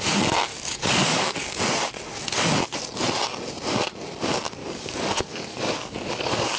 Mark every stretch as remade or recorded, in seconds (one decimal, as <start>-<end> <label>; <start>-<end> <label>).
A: 0.0-0.5 recorded; 0.5-1.6 remade; 1.6-4.6 recorded; 4.6-6.6 remade